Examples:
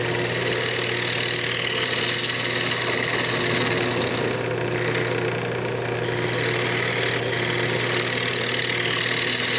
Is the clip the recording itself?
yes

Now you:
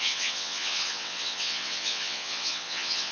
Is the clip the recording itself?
no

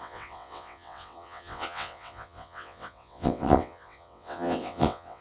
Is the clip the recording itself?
no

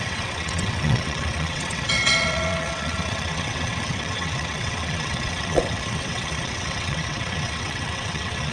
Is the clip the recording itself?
no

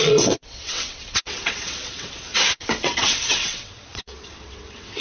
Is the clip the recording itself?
no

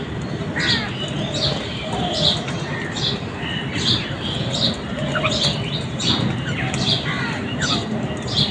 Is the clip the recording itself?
yes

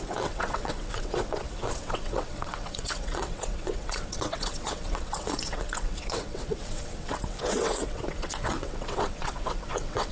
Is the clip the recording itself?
no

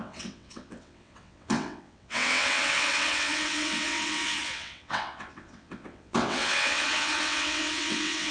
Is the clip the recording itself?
no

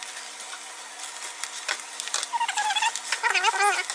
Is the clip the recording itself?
yes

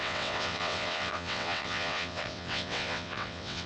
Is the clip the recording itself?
no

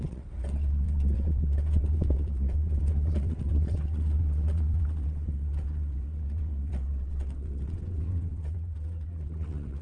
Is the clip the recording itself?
no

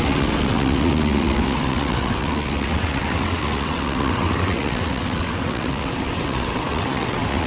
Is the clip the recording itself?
no